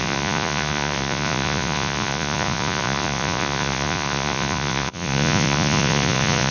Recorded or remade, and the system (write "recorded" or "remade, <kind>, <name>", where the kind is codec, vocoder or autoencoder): remade, vocoder, Vocos